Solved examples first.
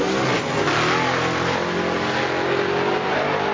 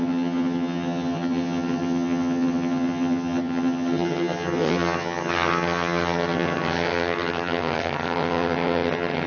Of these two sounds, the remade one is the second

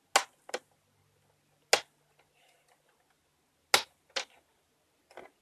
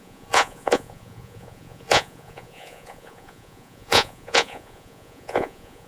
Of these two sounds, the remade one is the second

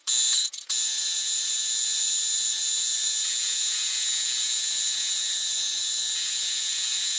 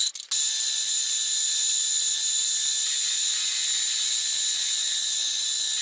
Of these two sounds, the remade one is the first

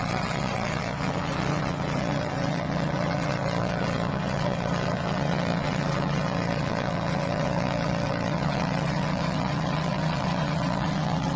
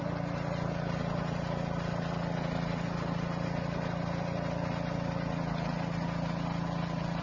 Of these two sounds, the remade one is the first